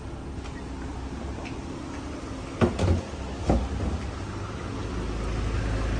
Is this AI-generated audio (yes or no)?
no